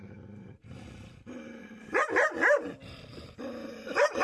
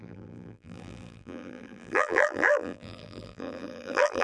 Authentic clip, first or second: first